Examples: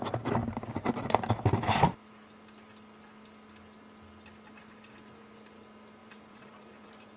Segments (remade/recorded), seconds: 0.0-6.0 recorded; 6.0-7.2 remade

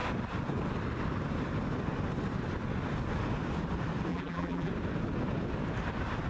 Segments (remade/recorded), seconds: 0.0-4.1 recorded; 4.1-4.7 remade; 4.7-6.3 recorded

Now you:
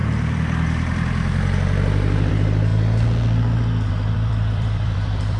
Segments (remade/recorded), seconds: 0.0-2.7 remade; 2.7-3.9 recorded; 3.9-5.4 remade